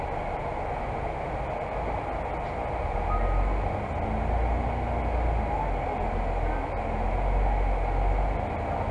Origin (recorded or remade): recorded